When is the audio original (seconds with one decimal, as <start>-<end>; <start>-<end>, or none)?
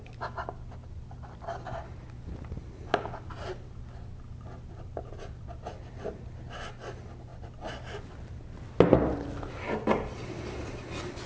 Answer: 0.0-11.3